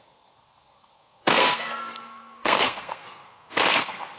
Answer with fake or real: fake